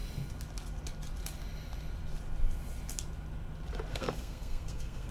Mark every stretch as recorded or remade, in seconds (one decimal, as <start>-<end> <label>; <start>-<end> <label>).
0.0-3.9 recorded; 3.9-5.1 remade